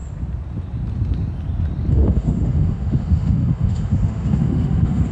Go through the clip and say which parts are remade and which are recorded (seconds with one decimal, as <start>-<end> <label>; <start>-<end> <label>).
0.0-1.9 recorded; 1.9-5.1 remade